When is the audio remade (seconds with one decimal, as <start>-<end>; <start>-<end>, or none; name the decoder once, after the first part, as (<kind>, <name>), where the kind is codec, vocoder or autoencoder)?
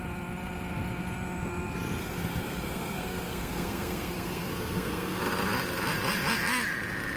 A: 2.0-5.2 (codec, SNAC)